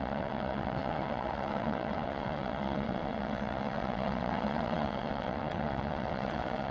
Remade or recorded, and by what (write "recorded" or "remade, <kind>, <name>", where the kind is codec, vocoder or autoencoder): remade, vocoder, WaveNeXt